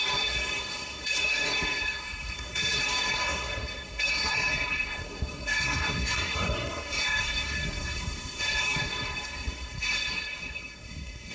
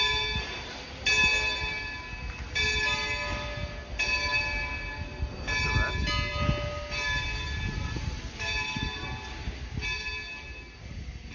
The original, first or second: second